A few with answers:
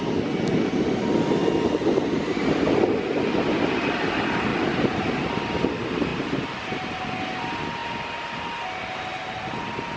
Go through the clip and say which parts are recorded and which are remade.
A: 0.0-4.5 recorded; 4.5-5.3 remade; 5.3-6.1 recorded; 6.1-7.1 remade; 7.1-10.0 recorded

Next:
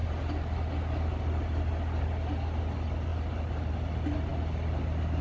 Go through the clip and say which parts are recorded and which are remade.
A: 0.0-5.2 recorded

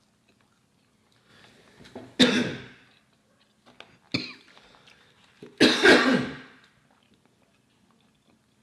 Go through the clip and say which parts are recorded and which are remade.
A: 0.0-1.3 recorded; 1.3-2.2 remade; 2.2-8.6 recorded